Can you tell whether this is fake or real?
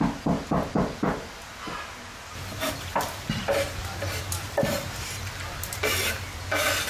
real